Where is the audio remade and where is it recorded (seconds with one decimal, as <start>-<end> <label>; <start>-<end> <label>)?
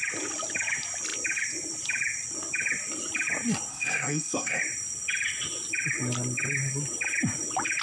0.0-3.7 recorded; 3.7-4.6 remade; 4.6-7.8 recorded